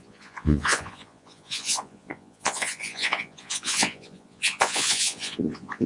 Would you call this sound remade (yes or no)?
yes